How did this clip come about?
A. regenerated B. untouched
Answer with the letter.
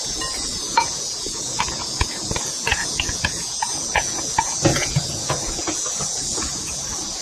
A